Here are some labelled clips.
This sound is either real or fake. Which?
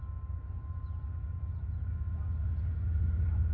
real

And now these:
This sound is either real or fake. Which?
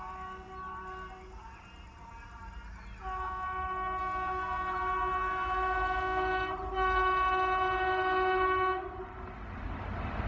real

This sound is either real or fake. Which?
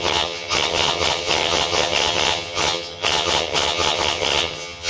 fake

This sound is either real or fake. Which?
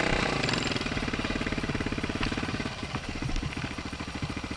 fake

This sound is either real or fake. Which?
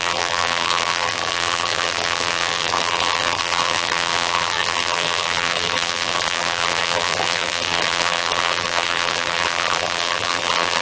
fake